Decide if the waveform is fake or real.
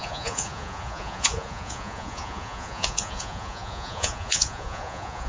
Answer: fake